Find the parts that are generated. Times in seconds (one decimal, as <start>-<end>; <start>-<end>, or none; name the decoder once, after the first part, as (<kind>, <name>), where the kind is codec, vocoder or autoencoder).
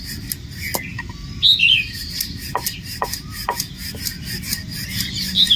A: none